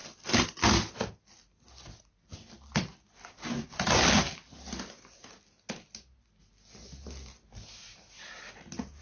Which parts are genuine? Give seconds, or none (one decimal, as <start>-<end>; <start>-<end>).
0.0-9.0